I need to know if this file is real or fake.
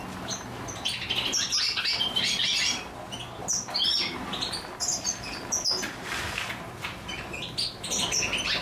real